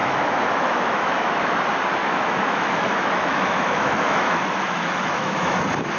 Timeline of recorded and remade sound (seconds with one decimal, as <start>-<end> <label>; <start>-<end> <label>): 0.0-1.6 remade; 1.6-2.0 recorded; 2.0-5.6 remade; 5.6-6.0 recorded